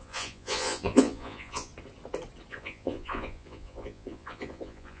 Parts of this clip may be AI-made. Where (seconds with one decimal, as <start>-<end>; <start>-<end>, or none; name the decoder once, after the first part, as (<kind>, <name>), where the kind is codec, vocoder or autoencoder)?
0.0-1.7 (vocoder, Vocos); 2.5-5.0